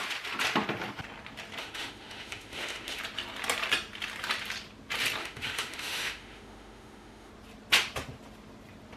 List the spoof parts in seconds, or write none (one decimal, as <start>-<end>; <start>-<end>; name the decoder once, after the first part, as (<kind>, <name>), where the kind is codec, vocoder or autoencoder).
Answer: 1.6-3.0 (autoencoder, DAC-VAE); 5.2-7.3